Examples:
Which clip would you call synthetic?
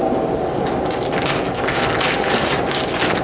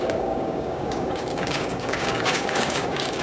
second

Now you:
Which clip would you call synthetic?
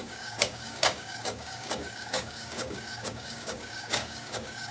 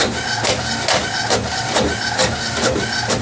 first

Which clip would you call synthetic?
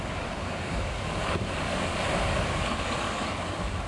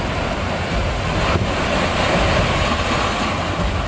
first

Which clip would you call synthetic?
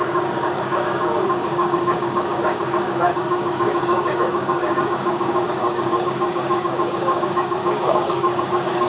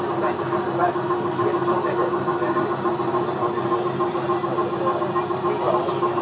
first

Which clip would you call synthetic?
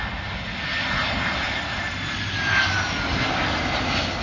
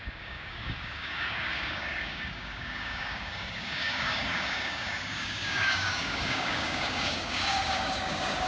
second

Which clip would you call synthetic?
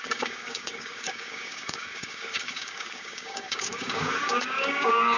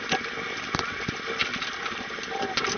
first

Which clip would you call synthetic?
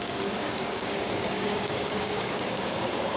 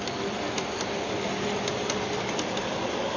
first